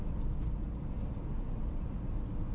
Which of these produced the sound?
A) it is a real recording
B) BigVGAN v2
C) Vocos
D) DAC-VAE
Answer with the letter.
B